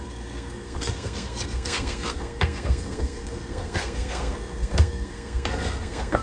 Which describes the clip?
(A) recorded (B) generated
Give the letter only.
B